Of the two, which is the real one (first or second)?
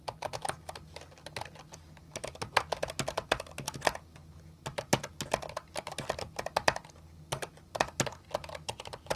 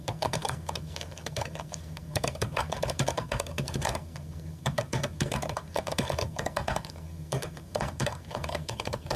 first